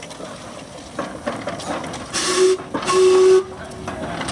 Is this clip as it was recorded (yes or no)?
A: yes